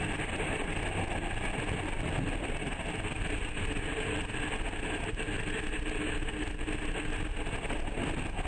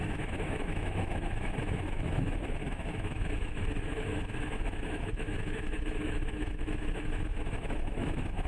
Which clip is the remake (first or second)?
second